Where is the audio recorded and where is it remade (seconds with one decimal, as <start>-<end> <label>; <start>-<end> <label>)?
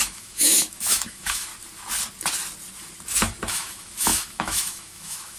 0.0-1.5 remade; 1.5-3.5 recorded; 3.5-5.4 remade